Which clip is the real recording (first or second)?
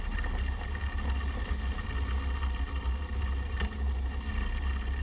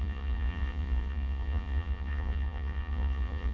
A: first